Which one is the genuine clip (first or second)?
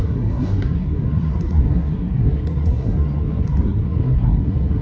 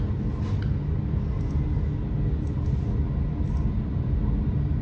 second